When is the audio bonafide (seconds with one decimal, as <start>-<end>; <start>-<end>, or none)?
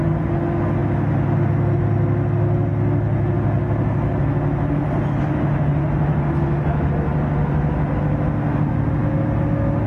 0.0-9.9